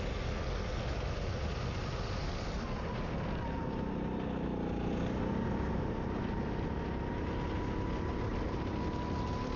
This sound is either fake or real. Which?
real